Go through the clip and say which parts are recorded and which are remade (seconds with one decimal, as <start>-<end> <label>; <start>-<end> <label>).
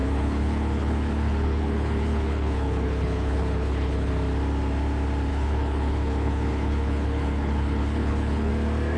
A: 0.0-4.1 remade; 4.1-5.3 recorded; 5.3-8.5 remade; 8.5-9.0 recorded